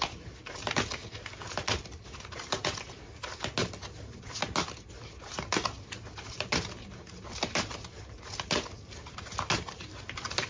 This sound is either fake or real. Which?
real